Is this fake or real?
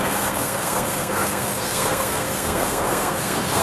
fake